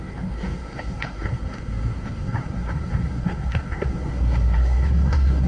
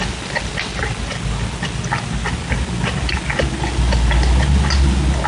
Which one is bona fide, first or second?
second